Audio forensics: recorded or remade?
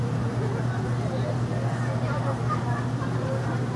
recorded